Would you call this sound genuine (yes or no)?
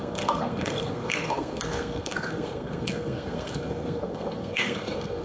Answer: no